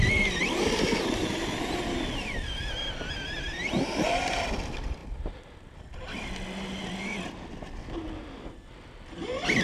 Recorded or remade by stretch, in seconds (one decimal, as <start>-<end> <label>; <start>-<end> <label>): 0.0-9.6 recorded